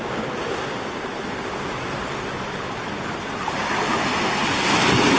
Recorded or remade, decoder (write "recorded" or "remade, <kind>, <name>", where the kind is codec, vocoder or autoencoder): recorded